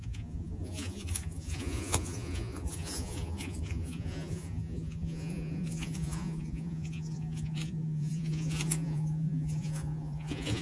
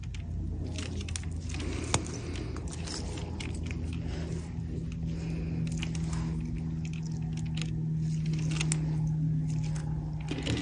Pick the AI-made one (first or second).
first